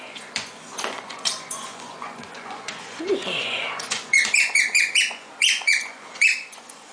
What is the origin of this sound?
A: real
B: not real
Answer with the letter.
B